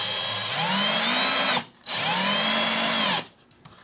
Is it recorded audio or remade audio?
recorded